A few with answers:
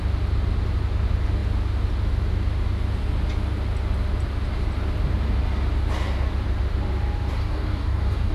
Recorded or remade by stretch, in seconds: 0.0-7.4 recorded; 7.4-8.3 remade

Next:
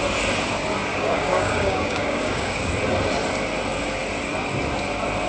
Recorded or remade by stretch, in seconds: 0.0-0.9 recorded; 0.9-2.7 remade; 2.7-5.3 recorded

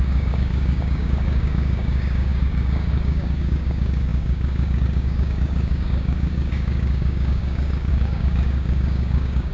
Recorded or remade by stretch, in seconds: 0.0-9.5 remade

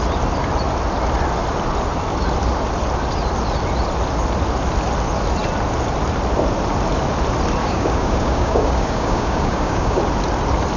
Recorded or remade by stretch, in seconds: 0.0-7.6 recorded; 7.6-10.0 remade; 10.0-10.8 recorded

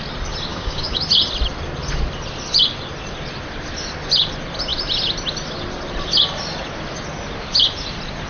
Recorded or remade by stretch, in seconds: 0.0-0.5 recorded; 0.5-1.0 remade; 1.0-8.3 recorded

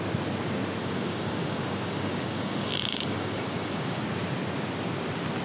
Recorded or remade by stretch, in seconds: 0.0-0.8 recorded; 0.8-4.0 remade; 4.0-5.4 recorded

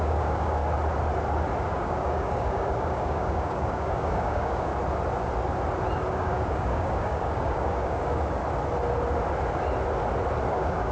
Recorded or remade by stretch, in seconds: 0.0-0.6 remade; 0.6-1.6 recorded; 1.6-4.7 remade; 4.7-6.1 recorded; 6.1-8.4 remade; 8.4-10.5 recorded; 10.5-10.9 remade